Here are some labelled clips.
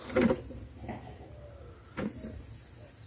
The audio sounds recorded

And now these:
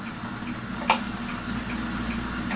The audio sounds recorded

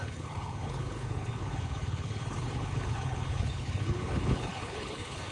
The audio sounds remade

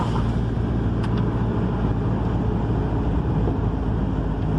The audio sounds recorded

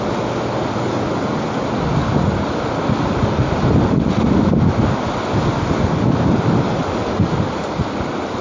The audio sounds recorded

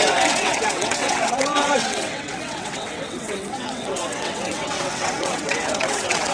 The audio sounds remade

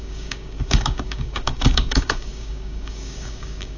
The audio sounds remade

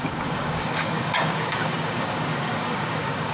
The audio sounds remade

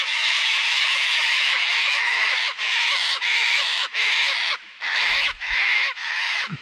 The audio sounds remade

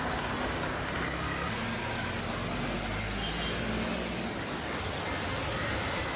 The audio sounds recorded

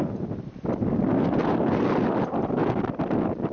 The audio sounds recorded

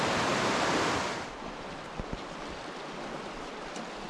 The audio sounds recorded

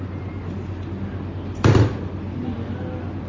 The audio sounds recorded